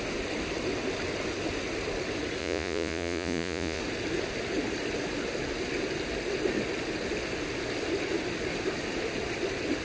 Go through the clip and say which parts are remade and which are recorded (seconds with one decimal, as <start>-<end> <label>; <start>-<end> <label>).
0.0-2.4 recorded; 2.4-3.8 remade; 3.8-9.8 recorded